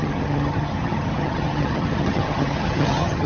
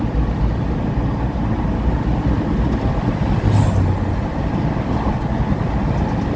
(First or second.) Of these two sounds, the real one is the second